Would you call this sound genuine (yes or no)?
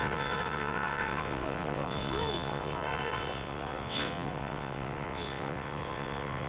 no